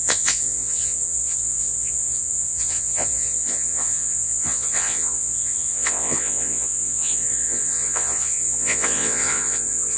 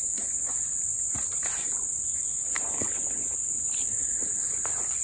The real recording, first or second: second